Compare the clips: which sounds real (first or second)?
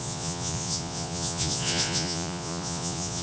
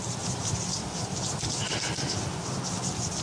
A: second